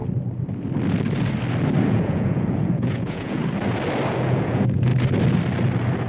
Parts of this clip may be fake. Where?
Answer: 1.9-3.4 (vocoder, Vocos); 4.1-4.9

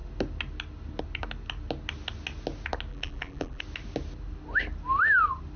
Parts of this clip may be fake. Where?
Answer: 2.9-3.6 (vocoder, BigVGAN v2)